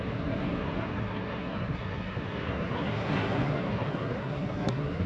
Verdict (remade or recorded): remade